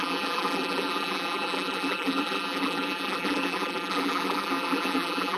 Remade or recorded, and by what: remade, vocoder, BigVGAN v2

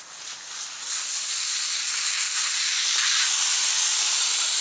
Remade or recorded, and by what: remade, vocoder, BigVGAN v2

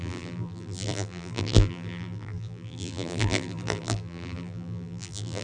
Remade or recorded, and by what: remade, vocoder, BigVGAN v2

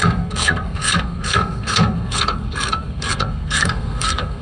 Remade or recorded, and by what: remade, codec, SNAC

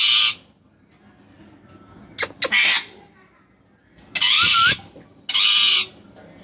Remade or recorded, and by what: recorded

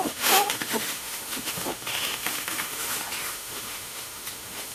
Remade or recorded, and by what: remade, autoencoder, DAC-VAE